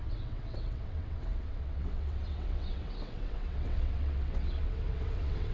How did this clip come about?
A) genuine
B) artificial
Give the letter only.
B